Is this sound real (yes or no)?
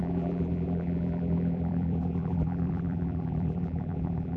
no